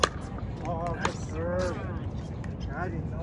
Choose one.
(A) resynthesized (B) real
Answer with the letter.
B